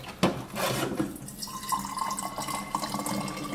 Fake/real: real